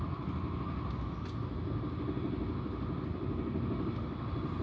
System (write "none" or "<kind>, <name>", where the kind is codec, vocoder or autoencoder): none